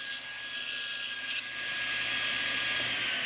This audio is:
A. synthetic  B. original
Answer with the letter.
B